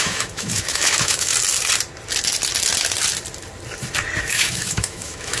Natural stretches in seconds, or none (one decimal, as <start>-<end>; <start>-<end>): 1.3-4.2